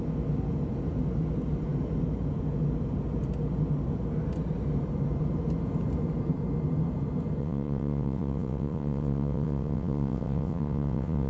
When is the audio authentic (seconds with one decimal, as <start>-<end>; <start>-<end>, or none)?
0.0-7.4